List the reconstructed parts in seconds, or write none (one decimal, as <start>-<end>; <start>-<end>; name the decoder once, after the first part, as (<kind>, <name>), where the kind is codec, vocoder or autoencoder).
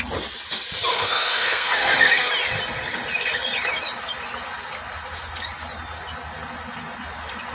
0.9-2.3 (codec, SNAC)